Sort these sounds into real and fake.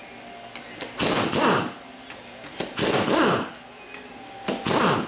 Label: real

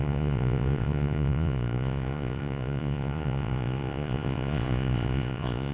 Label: fake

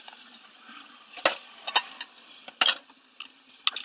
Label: real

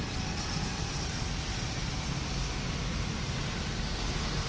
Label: real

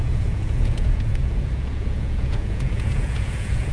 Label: fake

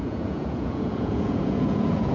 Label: fake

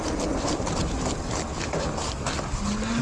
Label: real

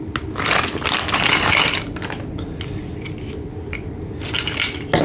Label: real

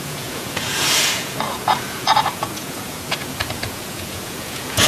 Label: fake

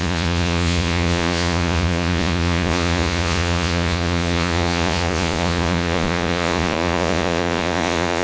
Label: fake